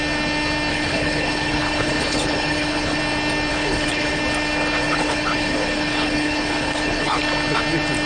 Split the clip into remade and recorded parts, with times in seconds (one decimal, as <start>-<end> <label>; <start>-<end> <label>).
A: 0.0-0.7 recorded; 0.7-3.0 remade; 3.0-3.5 recorded; 3.5-4.2 remade; 4.2-4.8 recorded; 4.8-7.2 remade; 7.2-8.1 recorded